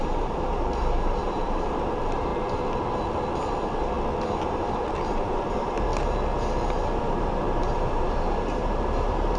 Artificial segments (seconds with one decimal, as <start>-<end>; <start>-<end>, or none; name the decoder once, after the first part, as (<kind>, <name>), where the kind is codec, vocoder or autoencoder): 0.0-2.3 (vocoder, BigVGAN v2); 4.4-5.9; 7.0-9.4